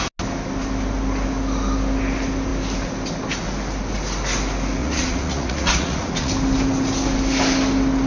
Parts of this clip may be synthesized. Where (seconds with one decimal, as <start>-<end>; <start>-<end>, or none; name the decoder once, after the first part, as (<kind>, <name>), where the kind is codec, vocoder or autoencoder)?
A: 4.8-6.3 (vocoder, Vocos)